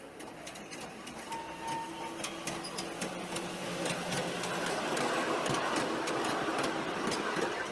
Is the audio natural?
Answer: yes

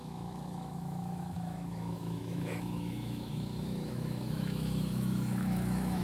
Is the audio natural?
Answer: no